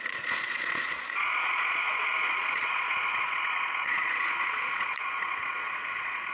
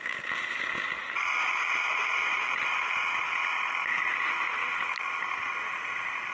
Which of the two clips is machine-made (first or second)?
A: first